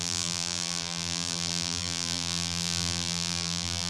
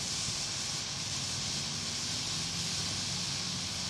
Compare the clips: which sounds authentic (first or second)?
second